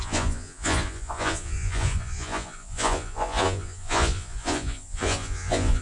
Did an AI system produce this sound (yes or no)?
yes